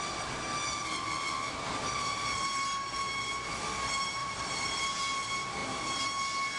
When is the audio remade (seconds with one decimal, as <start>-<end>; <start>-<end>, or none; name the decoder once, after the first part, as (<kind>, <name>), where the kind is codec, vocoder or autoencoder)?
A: 4.2-5.0 (vocoder, BigVGAN v2)